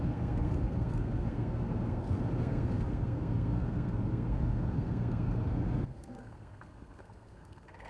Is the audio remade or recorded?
remade